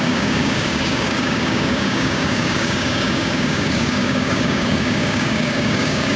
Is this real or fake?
fake